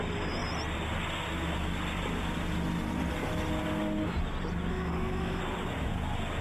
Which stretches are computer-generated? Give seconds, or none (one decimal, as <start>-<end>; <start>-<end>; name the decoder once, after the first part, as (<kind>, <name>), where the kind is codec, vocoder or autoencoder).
4.7-5.4 (autoencoder, DAC-VAE)